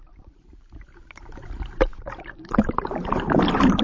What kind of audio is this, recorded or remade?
remade